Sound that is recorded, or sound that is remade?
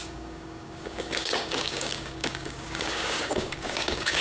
remade